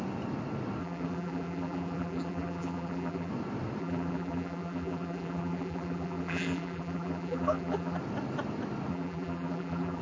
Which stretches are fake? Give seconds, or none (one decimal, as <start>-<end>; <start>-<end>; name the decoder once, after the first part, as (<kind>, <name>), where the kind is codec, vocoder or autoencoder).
0.8-3.3 (vocoder, BigVGAN v2); 3.8-8.0; 8.9-10.0